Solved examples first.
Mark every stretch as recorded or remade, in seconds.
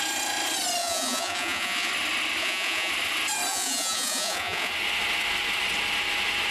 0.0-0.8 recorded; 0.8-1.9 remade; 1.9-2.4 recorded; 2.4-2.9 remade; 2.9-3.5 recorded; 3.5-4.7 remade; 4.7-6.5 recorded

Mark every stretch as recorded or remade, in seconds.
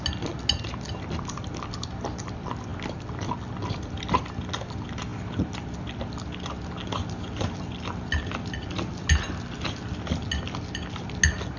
0.0-11.6 recorded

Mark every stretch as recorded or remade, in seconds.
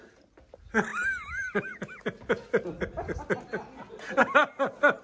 0.0-0.9 recorded; 0.9-3.3 remade; 3.3-5.0 recorded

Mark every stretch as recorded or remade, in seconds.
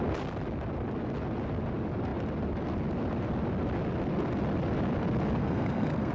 0.0-5.4 recorded; 5.4-6.1 remade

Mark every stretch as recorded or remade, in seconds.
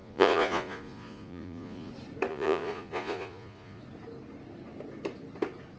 0.0-1.9 remade; 1.9-2.3 recorded; 2.3-3.8 remade; 3.8-5.8 recorded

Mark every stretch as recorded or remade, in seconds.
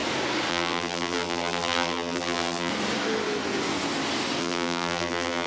0.0-0.5 recorded; 0.5-2.7 remade; 2.7-4.4 recorded; 4.4-5.5 remade